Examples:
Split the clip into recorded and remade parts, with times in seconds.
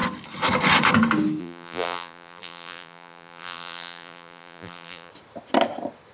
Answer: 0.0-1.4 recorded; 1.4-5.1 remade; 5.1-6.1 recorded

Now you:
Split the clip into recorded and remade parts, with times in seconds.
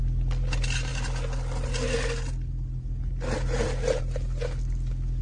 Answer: 0.0-5.2 recorded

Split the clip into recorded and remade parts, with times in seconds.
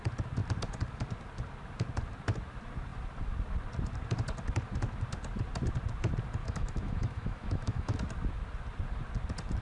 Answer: 0.0-6.4 recorded; 6.4-8.0 remade; 8.0-9.6 recorded